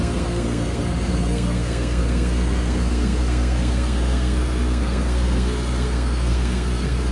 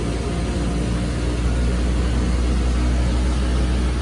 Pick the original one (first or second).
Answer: second